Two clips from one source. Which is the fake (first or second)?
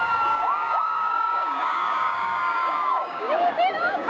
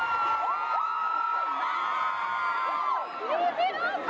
first